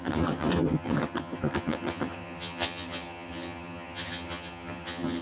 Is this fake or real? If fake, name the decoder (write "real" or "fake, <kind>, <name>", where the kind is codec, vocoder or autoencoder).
fake, vocoder, HiFi-GAN